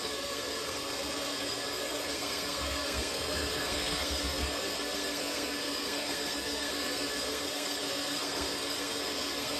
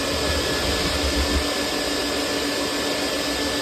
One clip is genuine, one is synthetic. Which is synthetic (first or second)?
first